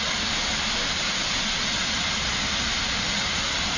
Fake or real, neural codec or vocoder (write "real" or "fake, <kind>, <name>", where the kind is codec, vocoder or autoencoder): real